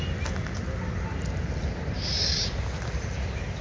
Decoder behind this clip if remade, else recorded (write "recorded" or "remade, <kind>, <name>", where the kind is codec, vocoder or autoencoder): recorded